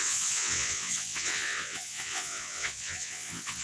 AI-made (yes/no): yes